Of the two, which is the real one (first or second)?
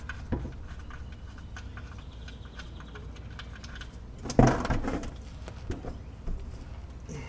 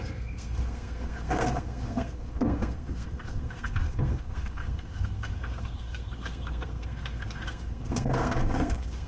first